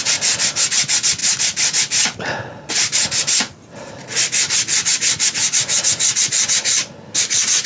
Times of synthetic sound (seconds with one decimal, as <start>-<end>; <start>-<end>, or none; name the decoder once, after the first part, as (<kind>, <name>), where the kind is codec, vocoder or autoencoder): 1.2-2.2 (vocoder, BigVGAN v2)